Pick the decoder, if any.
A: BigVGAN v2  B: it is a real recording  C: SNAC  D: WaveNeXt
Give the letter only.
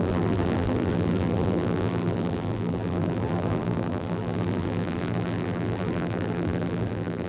A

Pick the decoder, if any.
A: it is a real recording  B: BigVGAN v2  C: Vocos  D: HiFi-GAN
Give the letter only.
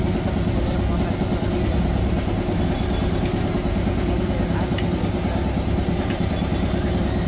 A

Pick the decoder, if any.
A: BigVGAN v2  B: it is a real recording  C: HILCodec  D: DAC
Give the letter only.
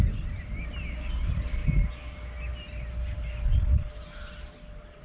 B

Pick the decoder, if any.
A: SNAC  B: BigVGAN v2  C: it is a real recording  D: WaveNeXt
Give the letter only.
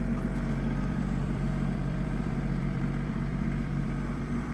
B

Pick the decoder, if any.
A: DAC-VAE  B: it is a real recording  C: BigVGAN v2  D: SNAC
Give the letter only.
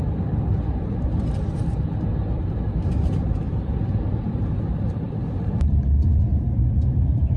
C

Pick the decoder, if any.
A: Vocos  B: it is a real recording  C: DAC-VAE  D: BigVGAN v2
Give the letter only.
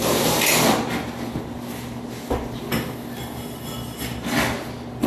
B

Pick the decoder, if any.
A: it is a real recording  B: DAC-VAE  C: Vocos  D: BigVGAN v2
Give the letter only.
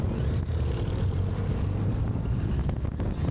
A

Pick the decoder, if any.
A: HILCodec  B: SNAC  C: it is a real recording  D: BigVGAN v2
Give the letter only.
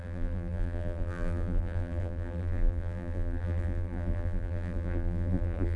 D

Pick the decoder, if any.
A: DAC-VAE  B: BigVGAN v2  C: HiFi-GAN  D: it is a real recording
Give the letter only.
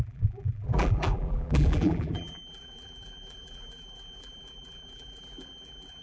B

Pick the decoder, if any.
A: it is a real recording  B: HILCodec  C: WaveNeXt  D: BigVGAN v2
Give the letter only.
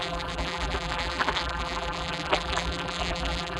D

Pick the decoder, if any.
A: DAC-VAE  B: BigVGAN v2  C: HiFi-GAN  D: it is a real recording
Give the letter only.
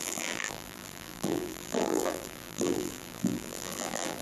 B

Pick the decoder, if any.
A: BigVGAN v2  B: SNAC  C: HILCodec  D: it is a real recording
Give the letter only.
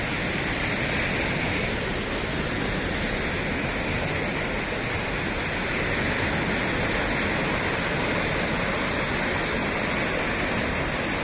D